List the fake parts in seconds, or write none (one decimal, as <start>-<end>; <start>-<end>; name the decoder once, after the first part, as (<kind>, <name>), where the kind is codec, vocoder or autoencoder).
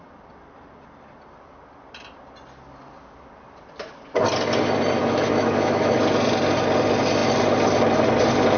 5.0-6.0 (autoencoder, DAC-VAE)